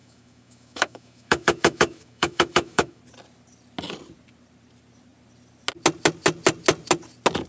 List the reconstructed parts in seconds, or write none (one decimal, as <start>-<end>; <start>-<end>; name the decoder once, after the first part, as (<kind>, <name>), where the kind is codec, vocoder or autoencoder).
0.0-3.0 (autoencoder, DAC-VAE)